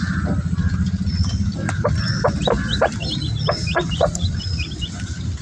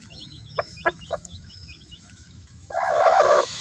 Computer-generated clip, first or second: second